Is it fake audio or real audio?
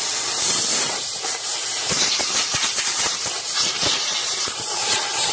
fake